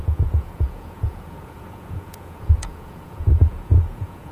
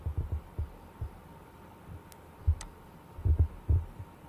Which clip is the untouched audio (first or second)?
second